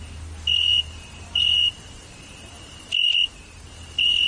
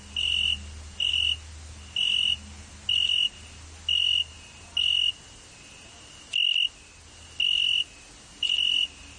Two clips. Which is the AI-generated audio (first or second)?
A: first